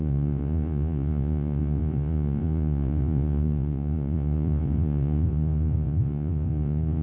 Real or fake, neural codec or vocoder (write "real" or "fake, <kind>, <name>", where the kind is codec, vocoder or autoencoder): fake, vocoder, Vocos